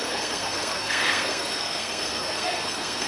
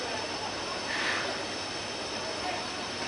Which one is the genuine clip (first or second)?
second